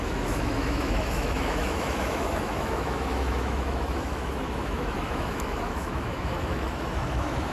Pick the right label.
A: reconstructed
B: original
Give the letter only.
A